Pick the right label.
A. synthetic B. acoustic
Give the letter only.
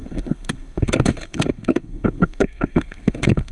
A